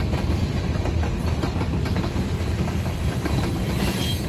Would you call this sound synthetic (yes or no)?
no